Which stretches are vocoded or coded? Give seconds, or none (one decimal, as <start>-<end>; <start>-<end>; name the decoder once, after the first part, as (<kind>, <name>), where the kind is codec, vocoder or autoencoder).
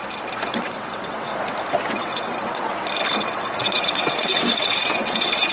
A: 0.5-1.3 (vocoder, WaveNeXt); 1.9-2.7; 3.2-5.5